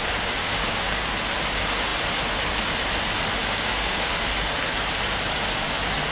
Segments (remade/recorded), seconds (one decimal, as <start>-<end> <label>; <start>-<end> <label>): 0.0-0.4 recorded; 0.4-1.1 remade; 1.1-3.4 recorded; 3.4-4.1 remade; 4.1-6.1 recorded

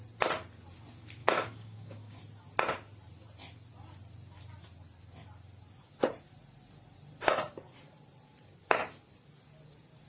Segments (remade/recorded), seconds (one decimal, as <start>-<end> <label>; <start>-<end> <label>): 0.0-1.2 recorded; 1.2-2.2 remade; 2.2-10.1 recorded